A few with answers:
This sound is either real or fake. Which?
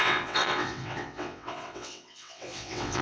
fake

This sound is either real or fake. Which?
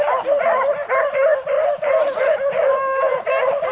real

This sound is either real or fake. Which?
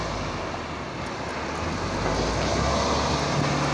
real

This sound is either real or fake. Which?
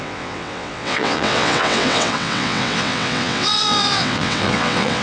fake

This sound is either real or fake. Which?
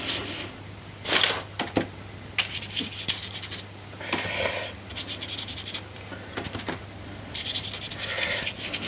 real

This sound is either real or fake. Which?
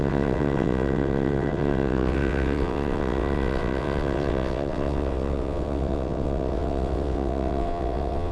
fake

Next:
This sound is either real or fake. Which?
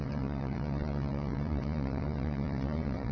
fake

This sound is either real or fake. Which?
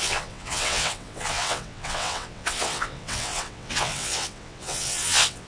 fake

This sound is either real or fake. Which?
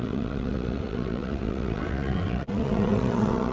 fake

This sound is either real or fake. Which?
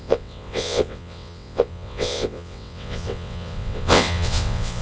fake